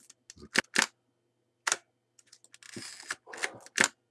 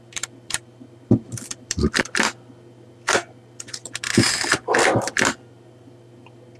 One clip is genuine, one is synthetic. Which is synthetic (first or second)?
second